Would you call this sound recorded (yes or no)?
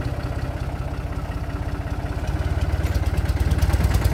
yes